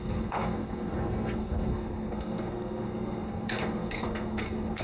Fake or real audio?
fake